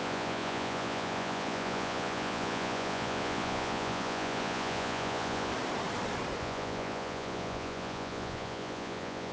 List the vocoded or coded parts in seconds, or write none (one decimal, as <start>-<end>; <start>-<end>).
0.0-5.5; 6.4-9.3

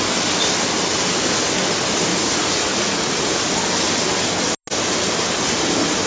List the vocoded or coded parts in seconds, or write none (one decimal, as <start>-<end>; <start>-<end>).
2.1-3.4